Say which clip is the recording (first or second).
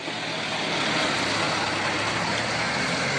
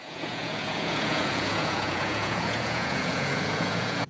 first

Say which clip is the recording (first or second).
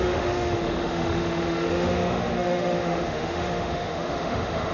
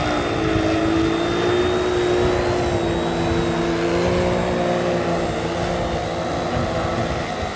second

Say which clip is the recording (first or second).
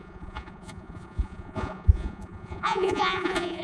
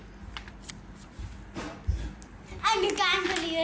second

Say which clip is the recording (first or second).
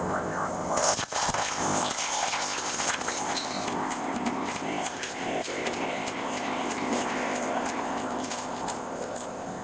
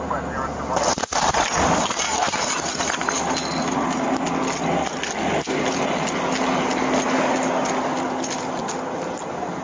second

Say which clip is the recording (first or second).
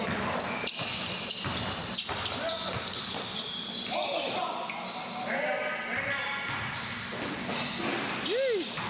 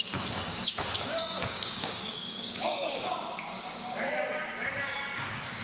first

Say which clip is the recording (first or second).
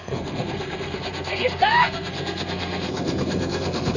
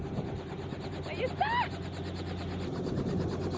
second